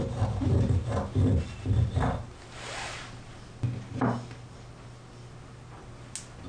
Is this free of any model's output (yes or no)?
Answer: yes